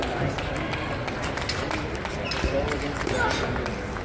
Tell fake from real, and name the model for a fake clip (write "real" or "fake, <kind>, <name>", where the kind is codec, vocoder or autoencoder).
real